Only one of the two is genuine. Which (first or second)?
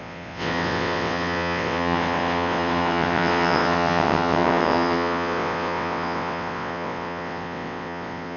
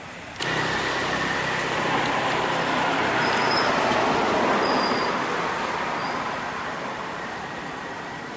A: second